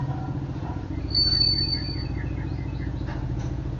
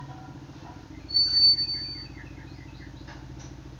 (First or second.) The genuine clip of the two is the second